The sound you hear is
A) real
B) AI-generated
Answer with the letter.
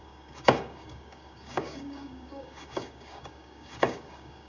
B